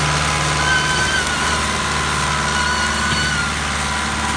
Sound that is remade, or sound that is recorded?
recorded